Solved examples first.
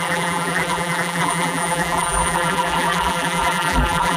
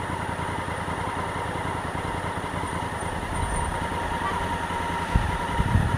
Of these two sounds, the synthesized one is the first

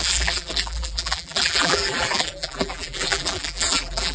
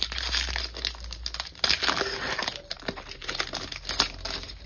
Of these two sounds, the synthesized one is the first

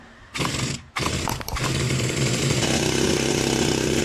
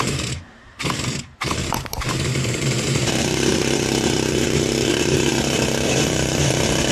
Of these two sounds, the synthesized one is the second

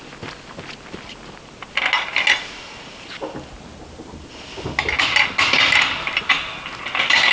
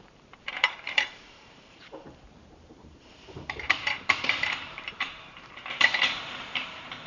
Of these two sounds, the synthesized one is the second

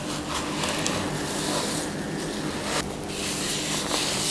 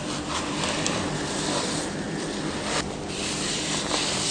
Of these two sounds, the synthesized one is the second